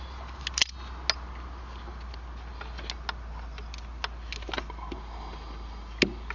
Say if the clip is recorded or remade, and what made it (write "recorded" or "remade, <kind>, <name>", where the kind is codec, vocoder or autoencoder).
recorded